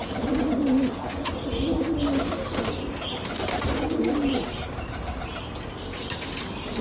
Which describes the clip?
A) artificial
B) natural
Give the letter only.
B